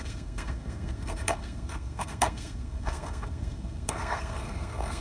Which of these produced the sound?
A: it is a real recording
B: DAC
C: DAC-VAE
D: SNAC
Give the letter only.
D